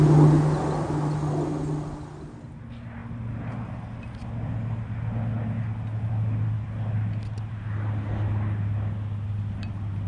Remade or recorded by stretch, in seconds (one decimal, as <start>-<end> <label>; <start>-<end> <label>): 0.0-10.1 recorded